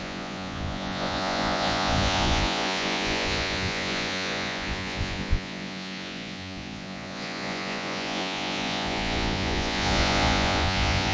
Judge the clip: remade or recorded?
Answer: remade